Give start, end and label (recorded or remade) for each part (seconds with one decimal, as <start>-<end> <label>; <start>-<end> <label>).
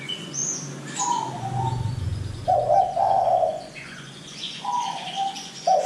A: 0.0-0.4 remade; 0.4-1.0 recorded; 1.0-5.9 remade